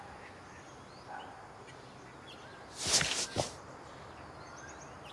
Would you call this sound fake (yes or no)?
no